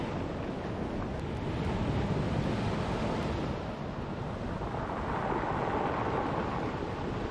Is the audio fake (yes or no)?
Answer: no